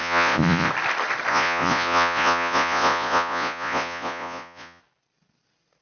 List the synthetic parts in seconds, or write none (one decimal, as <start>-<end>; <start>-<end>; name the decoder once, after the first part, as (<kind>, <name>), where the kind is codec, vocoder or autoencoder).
0.0-0.7 (vocoder, Vocos); 1.3-4.8

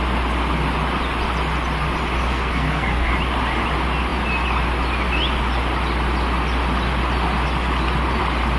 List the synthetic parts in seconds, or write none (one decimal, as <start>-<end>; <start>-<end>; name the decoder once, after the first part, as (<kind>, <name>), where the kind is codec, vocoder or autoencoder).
2.2-3.1 (codec, SNAC)